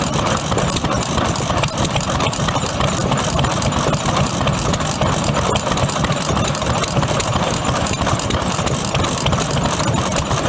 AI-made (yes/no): no